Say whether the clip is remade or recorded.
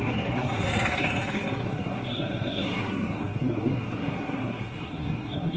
remade